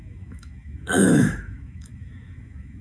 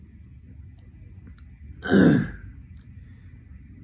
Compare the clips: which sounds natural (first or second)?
second